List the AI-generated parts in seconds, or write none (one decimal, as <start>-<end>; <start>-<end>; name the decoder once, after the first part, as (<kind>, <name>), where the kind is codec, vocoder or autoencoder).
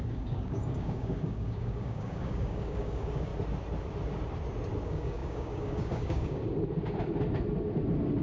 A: 0.0-3.3 (codec, DAC); 4.8-6.4